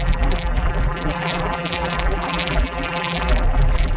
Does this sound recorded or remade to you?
remade